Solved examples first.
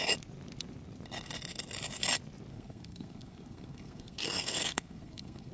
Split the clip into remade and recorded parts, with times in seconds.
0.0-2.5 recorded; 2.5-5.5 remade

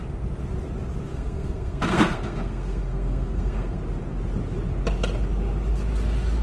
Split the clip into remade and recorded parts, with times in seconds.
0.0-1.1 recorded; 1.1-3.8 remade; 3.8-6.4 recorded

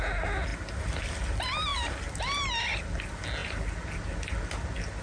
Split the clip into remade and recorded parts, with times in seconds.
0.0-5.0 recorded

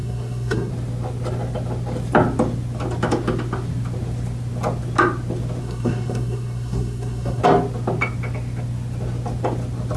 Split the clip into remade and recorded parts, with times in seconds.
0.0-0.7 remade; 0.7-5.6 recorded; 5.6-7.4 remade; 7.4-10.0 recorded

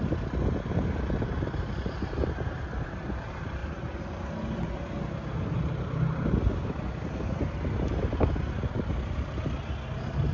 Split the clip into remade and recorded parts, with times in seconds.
0.0-10.3 recorded

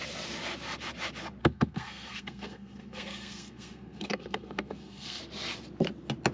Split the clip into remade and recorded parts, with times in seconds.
0.0-1.4 recorded; 1.4-5.2 remade; 5.2-6.3 recorded

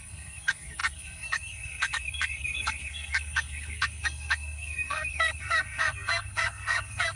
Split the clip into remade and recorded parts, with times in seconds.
0.0-7.2 remade

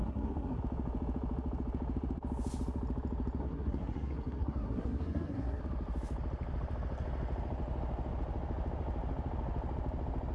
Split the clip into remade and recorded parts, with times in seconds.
0.0-0.6 remade; 0.6-3.4 recorded; 3.4-5.6 remade; 5.6-10.3 recorded